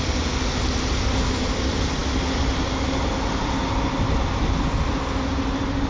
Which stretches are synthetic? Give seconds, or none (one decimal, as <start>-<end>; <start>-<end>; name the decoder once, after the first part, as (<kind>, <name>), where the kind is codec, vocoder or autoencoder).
none